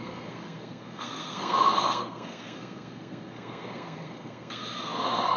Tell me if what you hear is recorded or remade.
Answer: remade